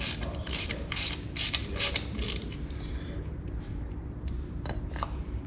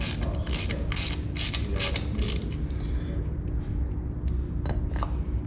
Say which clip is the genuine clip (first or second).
second